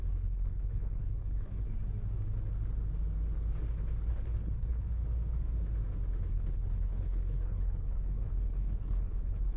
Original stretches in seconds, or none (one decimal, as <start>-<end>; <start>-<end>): 1.7-4.1; 5.0-6.3